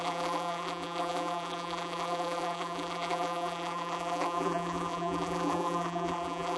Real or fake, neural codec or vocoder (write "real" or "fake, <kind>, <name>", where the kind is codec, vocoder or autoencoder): fake, vocoder, BigVGAN v2